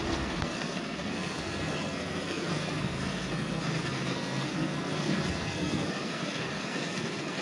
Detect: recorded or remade remade